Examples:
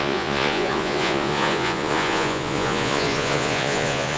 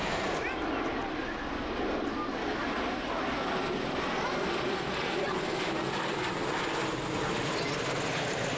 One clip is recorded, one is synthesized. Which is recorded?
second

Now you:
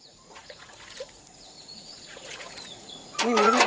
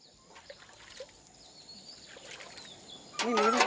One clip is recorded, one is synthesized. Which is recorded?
second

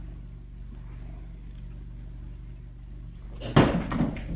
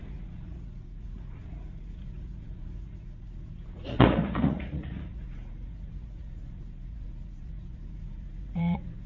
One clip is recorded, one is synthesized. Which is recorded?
first